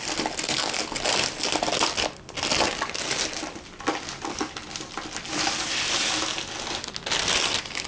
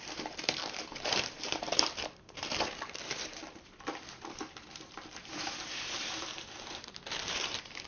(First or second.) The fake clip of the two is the second